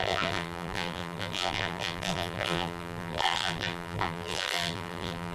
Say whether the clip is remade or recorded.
remade